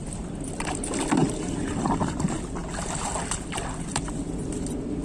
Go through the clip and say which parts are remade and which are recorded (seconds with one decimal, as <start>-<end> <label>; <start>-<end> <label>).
0.0-5.0 recorded